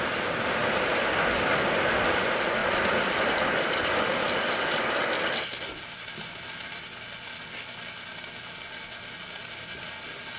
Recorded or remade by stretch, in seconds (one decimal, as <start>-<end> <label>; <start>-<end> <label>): 0.0-10.4 recorded